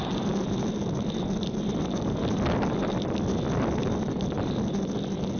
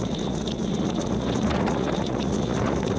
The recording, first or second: first